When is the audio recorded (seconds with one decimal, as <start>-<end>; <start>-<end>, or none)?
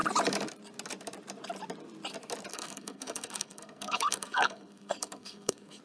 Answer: 0.0-2.5